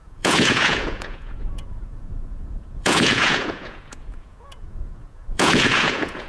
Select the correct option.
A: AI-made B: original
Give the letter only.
A